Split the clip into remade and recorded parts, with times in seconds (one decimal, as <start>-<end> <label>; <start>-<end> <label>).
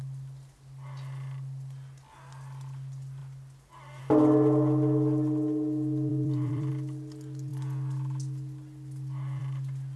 0.0-6.1 recorded; 6.1-6.7 remade; 6.7-10.0 recorded